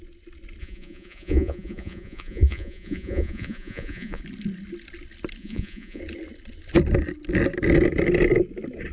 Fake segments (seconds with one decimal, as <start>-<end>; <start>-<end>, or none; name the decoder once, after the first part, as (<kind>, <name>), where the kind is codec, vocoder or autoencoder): 0.6-4.2 (vocoder, Vocos); 5.4-6.0